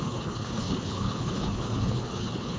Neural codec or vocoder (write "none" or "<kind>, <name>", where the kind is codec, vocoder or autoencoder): codec, HILCodec